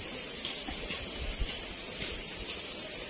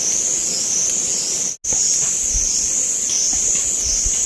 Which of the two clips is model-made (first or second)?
first